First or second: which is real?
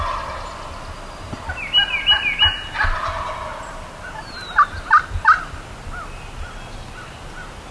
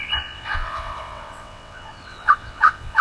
first